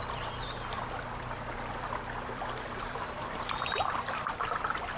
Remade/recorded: remade